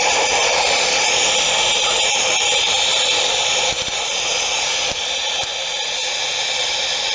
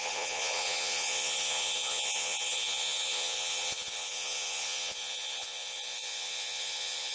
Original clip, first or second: first